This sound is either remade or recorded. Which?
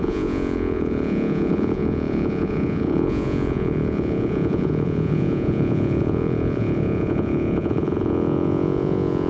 remade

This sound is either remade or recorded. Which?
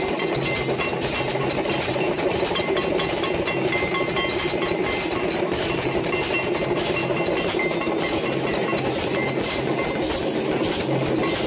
recorded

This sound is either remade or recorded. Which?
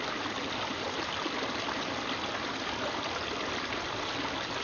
recorded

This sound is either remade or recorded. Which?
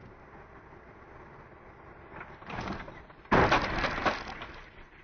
recorded